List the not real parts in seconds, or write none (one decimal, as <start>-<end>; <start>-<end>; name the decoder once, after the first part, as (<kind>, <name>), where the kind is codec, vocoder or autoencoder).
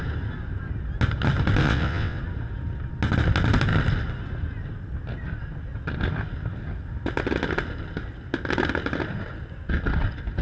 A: 1.6-2.2 (vocoder, WaveNeXt)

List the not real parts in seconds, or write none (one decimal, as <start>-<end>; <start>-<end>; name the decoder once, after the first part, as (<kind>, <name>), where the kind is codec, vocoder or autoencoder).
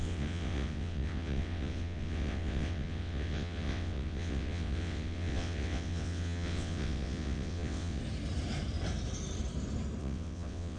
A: 0.0-8.0 (vocoder, WaveNeXt); 10.0-10.8